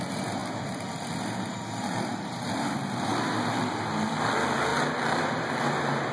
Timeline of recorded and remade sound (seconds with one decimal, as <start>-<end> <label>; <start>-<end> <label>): 0.0-6.1 recorded

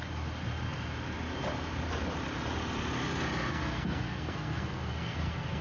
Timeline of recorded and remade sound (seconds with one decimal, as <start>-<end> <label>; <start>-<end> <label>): 0.0-3.5 recorded; 3.5-5.6 remade

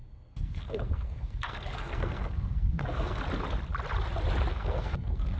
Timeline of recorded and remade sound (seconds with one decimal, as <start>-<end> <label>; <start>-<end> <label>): 0.0-3.2 remade; 3.2-4.5 recorded; 4.5-5.4 remade

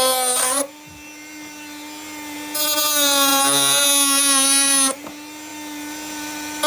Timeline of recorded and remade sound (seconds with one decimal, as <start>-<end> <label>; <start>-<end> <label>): 0.0-6.7 recorded

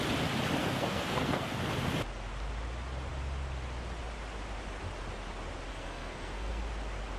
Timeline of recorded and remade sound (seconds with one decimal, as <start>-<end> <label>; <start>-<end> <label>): 0.0-0.6 recorded; 0.6-1.5 remade; 1.5-5.7 recorded; 5.7-6.6 remade; 6.6-7.2 recorded